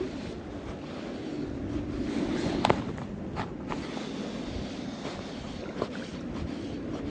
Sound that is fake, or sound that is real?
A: real